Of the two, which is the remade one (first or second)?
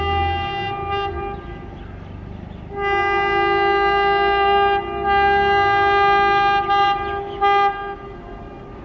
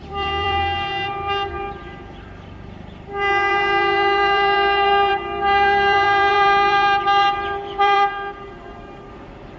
second